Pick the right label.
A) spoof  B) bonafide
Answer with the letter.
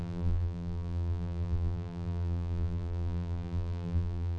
A